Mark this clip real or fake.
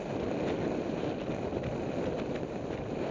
real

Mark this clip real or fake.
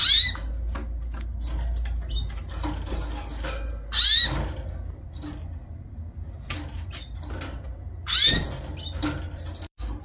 real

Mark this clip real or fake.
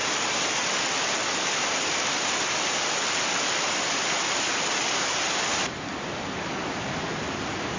real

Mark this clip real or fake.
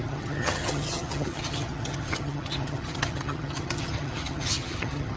fake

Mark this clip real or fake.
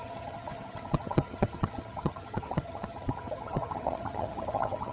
fake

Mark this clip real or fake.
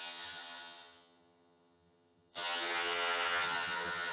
fake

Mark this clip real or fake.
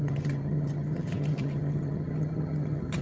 fake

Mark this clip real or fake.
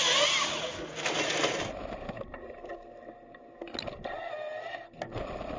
real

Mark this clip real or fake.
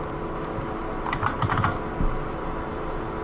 real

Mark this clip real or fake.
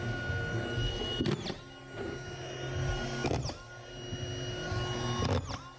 real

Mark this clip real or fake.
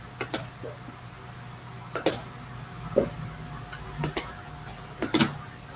real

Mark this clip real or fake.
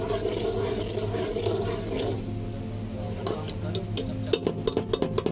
real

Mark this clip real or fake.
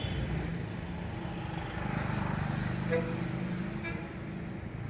real